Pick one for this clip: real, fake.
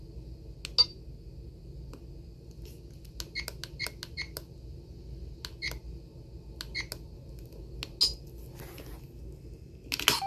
real